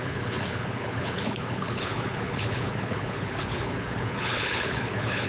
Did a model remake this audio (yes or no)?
yes